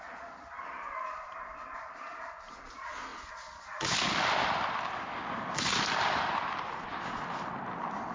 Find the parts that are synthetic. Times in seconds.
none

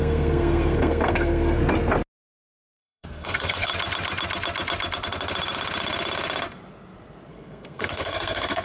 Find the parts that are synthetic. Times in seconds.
0.0-1.6 (codec, SNAC); 2.7-3.7; 7.3-8.6

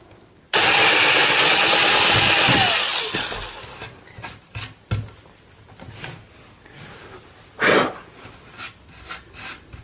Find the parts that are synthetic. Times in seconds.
none

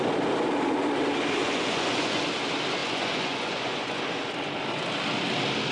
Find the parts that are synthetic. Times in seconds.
1.4-2.2 (vocoder, Vocos); 2.8-4.0